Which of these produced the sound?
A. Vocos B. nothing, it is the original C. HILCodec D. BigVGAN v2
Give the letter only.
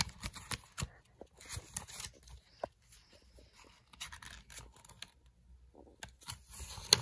B